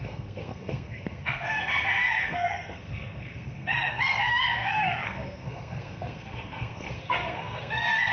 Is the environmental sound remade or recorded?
remade